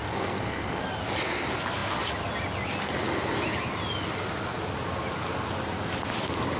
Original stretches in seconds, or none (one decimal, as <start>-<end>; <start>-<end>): 0.8-6.6